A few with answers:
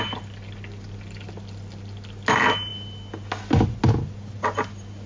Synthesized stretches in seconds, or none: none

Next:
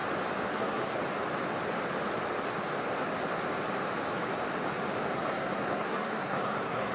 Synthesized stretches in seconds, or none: 0.5-1.0 (codec, SNAC); 5.1-6.9

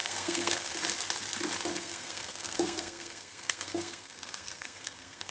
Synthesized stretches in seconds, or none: 0.0-0.7 (codec, SNAC); 1.7-5.3

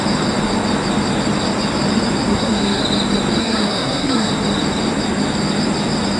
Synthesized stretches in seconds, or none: 2.3-2.8 (codec, SNAC); 3.4-4.3